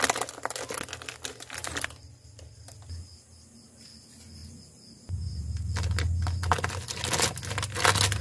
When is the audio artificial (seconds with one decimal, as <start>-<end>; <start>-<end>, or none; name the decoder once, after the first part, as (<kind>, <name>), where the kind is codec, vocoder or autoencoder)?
1.6-2.6 (vocoder, BigVGAN v2)